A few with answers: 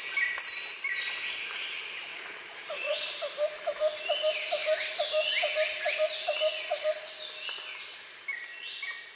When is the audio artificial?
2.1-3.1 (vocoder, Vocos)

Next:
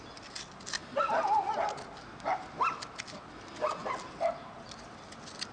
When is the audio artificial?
none

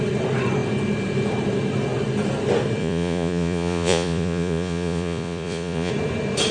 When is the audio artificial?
2.8-5.9 (vocoder, Vocos)